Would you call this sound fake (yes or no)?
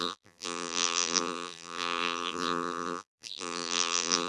yes